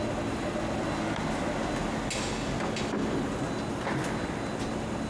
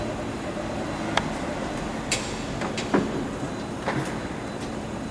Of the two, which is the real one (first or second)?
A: first